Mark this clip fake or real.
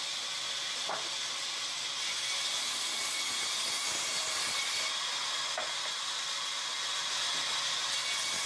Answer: real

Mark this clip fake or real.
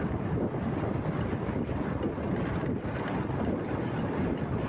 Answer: real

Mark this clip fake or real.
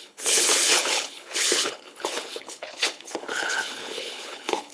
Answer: fake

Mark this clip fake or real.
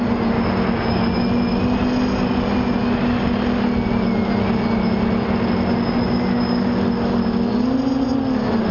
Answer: real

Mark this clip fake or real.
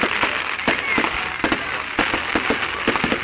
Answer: real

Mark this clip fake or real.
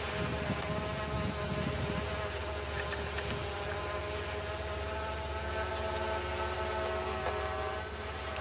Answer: real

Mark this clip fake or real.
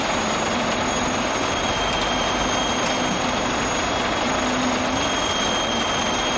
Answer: real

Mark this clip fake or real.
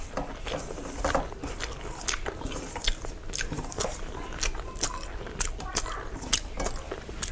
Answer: real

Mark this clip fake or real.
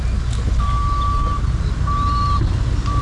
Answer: real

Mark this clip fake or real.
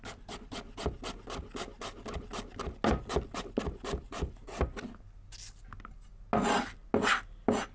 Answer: real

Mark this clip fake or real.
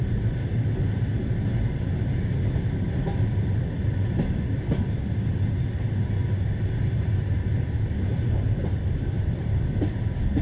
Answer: real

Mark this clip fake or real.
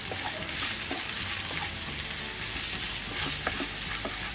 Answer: real